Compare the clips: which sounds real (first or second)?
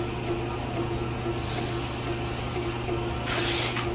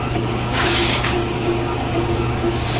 first